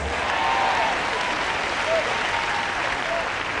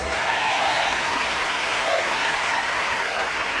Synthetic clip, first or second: second